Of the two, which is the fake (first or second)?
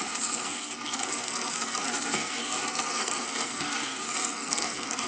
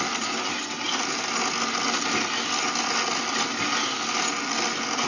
first